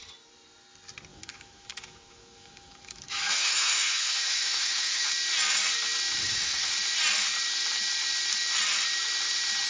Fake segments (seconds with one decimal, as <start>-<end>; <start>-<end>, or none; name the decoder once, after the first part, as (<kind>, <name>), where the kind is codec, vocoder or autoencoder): 1.1-5.1 (autoencoder, DAC-VAE); 6.2-6.7